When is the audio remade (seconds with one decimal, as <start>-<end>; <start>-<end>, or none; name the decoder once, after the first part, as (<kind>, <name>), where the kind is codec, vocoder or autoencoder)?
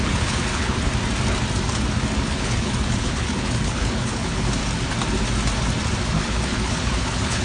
0.0-0.9 (codec, HILCodec); 2.2-4.6; 6.1-7.4